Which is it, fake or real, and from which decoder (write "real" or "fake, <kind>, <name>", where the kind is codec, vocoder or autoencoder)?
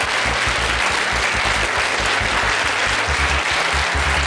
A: real